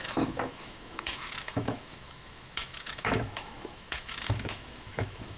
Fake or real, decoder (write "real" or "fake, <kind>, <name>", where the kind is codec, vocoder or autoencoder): fake, autoencoder, DAC-VAE